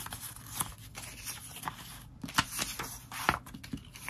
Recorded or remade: recorded